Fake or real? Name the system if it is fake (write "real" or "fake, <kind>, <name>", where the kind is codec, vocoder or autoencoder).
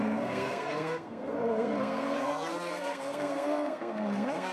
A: fake, codec, SNAC